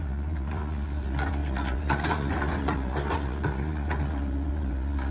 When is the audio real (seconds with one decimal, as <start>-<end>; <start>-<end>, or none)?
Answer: none